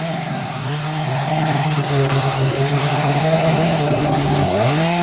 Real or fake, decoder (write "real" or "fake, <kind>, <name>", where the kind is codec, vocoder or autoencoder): fake, codec, SNAC